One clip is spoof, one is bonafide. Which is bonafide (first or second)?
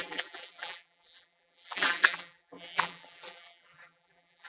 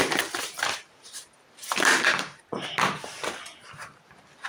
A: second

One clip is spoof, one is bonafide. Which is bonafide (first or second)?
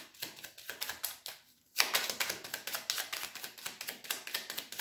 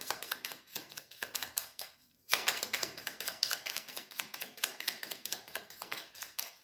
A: first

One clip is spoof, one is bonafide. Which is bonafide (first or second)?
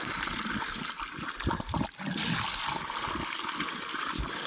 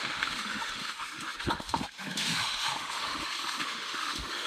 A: first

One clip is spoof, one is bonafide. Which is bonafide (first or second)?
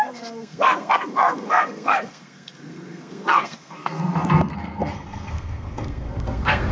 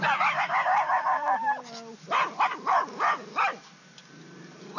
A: second